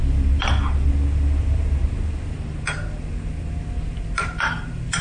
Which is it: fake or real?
real